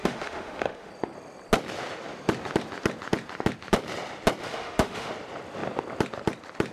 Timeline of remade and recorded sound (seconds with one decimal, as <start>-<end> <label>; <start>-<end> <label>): 0.0-0.9 remade; 0.9-4.4 recorded; 4.4-5.1 remade; 5.1-6.7 recorded